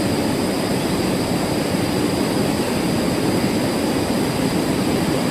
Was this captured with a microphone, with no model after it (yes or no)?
yes